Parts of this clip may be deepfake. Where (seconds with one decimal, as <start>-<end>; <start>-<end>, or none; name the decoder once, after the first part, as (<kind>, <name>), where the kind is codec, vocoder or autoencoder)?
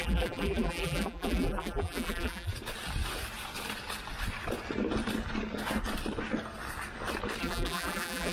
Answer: 0.0-2.5 (vocoder, BigVGAN v2); 7.4-8.3